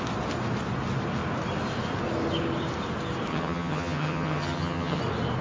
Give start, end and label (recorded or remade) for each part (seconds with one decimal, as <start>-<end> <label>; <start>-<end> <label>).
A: 0.0-3.3 recorded; 3.3-5.0 remade; 5.0-5.4 recorded